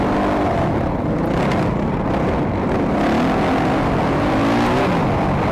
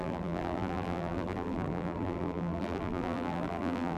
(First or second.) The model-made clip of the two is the second